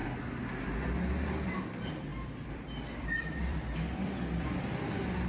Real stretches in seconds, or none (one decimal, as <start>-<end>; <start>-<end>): 0.0-2.1